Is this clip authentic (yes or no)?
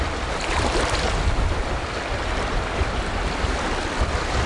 yes